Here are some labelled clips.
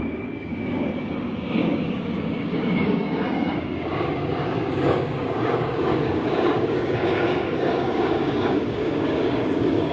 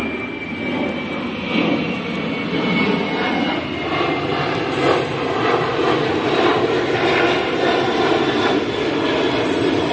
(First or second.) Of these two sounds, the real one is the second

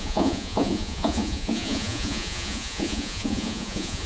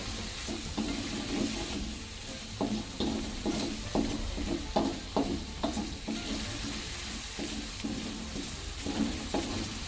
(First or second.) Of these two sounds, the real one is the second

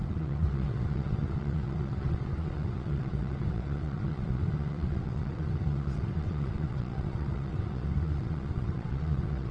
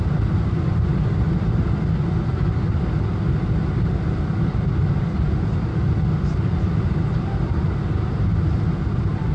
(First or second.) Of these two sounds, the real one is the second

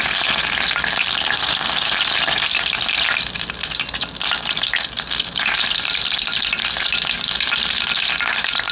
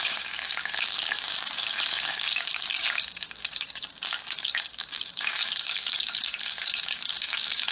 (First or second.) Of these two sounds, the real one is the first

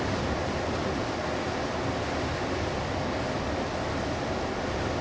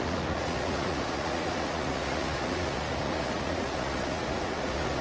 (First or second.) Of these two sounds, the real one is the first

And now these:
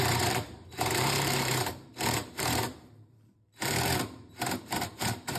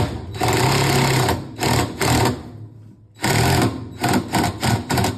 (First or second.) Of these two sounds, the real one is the second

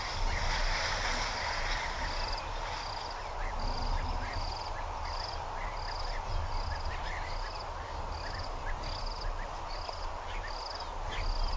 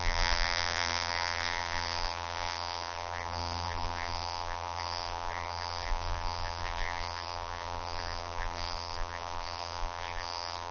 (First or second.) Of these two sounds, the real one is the first